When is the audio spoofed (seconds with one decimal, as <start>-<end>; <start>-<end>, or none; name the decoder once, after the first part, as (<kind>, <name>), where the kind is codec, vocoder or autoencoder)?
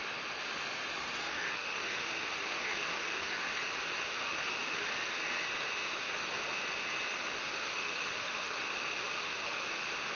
1.2-3.6 (autoencoder, DAC-VAE); 4.1-4.9; 7.5-8.6; 9.0-9.7